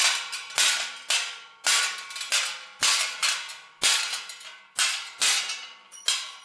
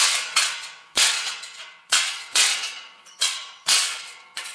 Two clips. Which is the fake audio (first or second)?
second